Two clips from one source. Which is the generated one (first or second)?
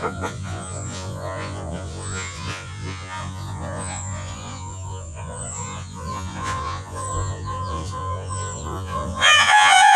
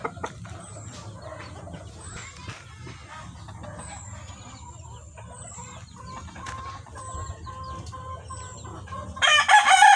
first